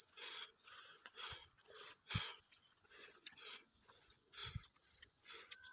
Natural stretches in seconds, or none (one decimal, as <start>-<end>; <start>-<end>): 1.4-1.9; 4.4-5.0